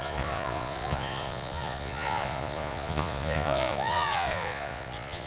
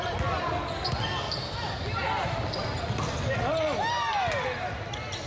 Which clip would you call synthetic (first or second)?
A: first